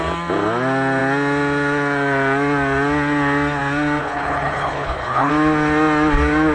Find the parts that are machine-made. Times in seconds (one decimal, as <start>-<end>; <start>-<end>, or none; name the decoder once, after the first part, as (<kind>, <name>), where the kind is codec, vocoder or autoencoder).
4.0-5.3 (codec, HILCodec)

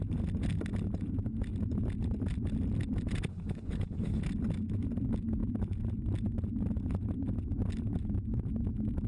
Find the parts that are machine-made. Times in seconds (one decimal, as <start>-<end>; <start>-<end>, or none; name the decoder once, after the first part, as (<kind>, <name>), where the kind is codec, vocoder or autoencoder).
3.3-4.2 (codec, HILCodec)

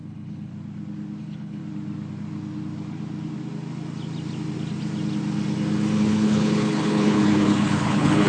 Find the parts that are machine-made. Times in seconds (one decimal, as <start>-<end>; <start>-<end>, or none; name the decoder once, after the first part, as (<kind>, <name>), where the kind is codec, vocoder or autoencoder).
0.0-0.5 (codec, HILCodec); 1.2-1.6; 6.0-8.3

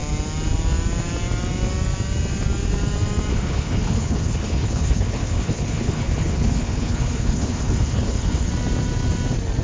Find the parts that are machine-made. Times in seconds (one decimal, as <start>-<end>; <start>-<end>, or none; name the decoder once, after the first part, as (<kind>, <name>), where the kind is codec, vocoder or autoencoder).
3.3-8.5 (codec, HILCodec)

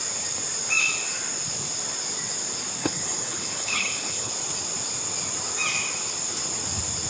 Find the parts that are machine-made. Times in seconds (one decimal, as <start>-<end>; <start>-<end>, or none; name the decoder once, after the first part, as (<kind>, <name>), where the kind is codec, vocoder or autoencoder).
2.8-4.3 (codec, HILCodec)

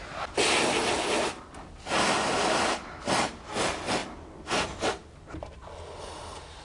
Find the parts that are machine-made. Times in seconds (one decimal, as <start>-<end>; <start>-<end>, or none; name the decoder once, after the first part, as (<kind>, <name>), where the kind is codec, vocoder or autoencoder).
none

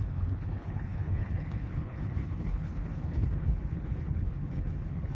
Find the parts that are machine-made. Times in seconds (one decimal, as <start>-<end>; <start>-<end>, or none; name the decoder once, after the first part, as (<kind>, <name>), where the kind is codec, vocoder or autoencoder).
0.0-5.1 (codec, HILCodec)

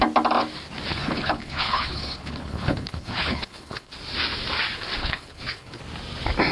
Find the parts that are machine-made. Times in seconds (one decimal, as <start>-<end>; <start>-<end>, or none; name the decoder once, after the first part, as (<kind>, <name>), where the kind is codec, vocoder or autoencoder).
0.9-3.9 (codec, HILCodec); 5.0-5.8